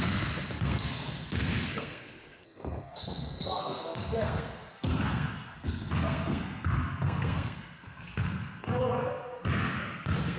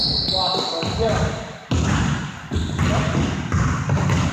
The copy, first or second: first